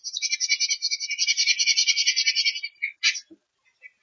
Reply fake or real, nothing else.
real